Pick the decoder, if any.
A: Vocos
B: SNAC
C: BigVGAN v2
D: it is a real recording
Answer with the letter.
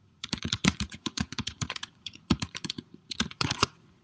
A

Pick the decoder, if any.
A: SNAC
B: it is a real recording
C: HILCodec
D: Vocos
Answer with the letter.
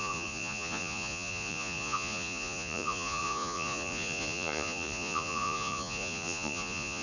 D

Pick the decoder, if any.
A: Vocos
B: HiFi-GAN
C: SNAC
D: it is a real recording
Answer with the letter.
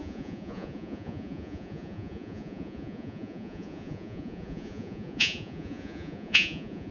A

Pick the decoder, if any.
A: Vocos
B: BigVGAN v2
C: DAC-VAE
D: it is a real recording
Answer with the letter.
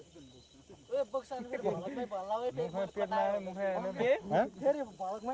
D